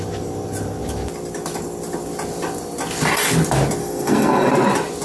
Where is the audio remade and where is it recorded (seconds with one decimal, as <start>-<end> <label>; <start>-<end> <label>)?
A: 0.0-3.8 recorded; 3.8-4.5 remade; 4.5-5.0 recorded